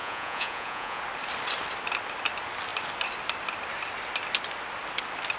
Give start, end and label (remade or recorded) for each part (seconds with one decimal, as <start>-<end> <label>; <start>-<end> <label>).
0.0-1.0 remade; 1.0-5.4 recorded